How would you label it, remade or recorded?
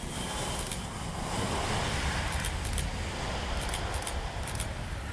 recorded